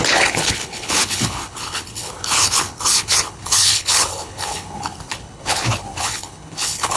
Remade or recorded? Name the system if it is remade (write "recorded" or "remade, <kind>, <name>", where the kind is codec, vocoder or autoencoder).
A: remade, codec, HILCodec